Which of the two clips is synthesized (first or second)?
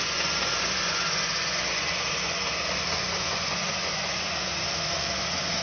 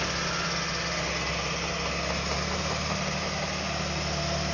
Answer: first